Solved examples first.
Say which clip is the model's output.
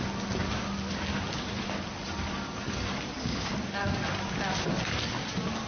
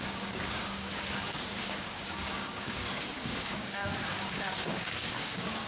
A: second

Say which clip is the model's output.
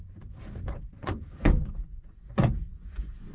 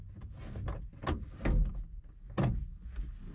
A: first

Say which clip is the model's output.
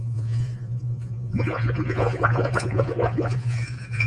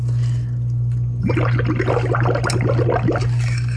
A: first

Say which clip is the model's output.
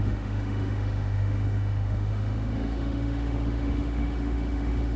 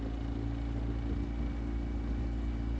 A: first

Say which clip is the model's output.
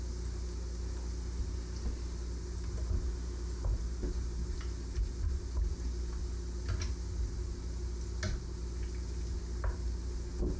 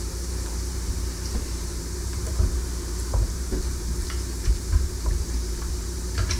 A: second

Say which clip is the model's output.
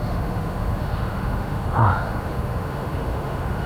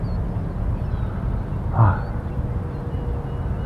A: first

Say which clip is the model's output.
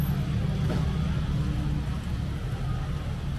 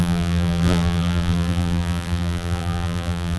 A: second